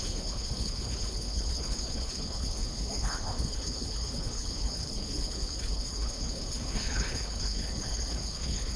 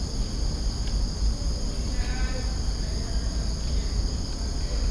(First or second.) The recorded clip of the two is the second